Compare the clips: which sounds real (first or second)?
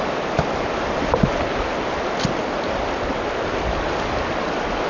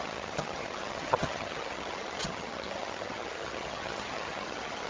first